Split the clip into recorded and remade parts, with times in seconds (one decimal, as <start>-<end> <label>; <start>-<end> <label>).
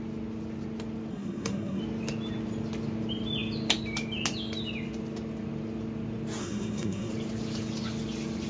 0.0-1.1 recorded; 1.1-1.8 remade; 1.8-6.4 recorded; 6.4-7.1 remade; 7.1-8.5 recorded